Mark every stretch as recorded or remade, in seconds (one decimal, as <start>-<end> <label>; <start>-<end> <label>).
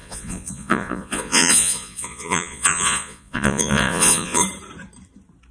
0.0-4.4 remade; 4.4-5.5 recorded